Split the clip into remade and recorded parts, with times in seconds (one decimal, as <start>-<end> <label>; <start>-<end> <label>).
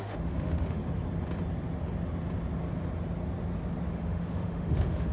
0.0-0.8 remade; 0.8-3.9 recorded; 3.9-5.1 remade